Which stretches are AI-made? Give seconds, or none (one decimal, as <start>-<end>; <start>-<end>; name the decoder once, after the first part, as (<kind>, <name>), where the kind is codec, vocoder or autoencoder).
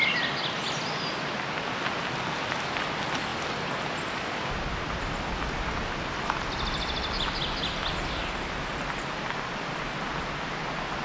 none